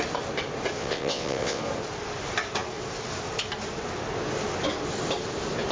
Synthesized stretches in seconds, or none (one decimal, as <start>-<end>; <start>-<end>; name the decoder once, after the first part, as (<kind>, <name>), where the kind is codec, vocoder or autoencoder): 0.8-1.6 (vocoder, WaveNeXt)